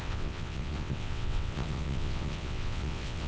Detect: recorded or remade remade